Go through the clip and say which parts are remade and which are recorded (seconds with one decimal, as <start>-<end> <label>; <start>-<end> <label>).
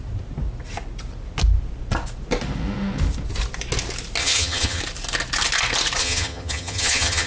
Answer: 0.0-4.2 recorded; 4.2-4.8 remade; 4.8-6.0 recorded; 6.0-7.3 remade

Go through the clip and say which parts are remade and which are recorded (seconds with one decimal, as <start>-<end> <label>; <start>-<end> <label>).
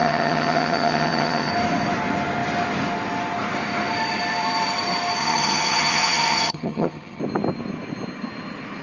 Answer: 0.0-1.5 remade; 1.5-5.2 recorded; 5.2-7.2 remade; 7.2-8.8 recorded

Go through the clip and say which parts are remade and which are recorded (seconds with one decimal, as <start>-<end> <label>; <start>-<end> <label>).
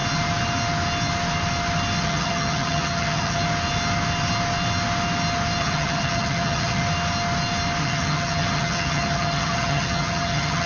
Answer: 0.0-2.0 recorded; 2.0-3.4 remade; 3.4-5.6 recorded; 5.6-6.8 remade; 6.8-7.8 recorded; 7.8-10.7 remade